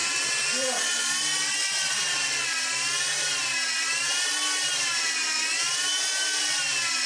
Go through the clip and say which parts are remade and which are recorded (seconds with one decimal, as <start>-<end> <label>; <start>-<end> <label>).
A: 0.0-7.1 recorded